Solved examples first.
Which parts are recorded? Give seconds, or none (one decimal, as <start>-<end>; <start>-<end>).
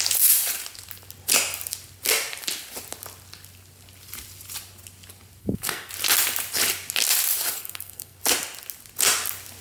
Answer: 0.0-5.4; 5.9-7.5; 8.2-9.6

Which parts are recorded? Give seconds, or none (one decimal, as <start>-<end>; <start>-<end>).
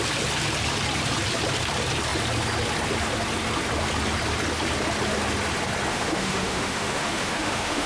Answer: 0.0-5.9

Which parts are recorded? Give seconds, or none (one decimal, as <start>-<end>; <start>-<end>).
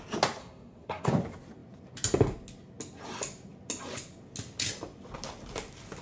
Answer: 0.0-0.4; 1.1-6.0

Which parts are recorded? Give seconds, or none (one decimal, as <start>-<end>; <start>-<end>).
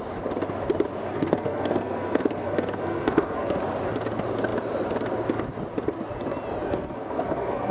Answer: 0.0-1.1; 3.6-6.7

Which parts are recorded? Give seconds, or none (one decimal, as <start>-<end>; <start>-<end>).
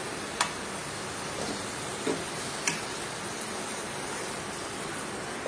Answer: 0.0-5.5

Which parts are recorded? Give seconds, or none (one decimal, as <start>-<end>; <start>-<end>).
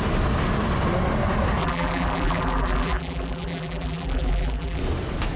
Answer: 0.0-1.6; 4.8-5.4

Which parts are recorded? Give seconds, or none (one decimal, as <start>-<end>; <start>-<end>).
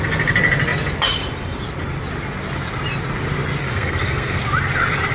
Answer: 0.0-3.7; 4.4-5.1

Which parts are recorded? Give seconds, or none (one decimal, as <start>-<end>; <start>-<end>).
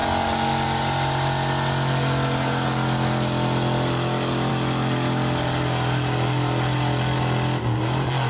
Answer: 0.0-8.3